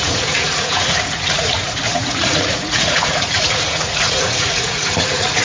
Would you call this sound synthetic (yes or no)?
yes